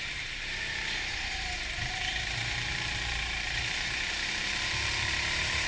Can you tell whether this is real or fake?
fake